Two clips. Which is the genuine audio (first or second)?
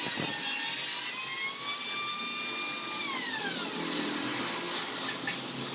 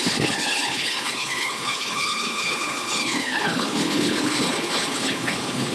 first